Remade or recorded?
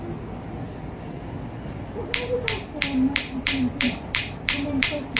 recorded